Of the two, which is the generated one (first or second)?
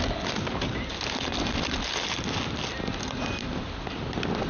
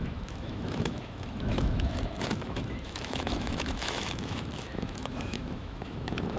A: second